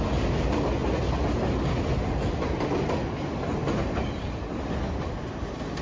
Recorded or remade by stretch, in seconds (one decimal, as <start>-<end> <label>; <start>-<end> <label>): 0.0-5.8 recorded